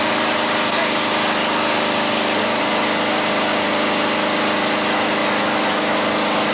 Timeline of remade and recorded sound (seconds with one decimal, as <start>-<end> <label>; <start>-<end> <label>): 0.0-5.2 recorded; 5.2-5.8 remade; 5.8-6.5 recorded